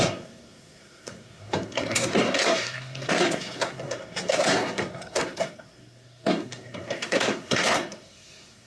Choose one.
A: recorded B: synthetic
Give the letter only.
B